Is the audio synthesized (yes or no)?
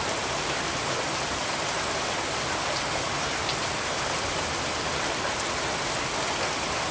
no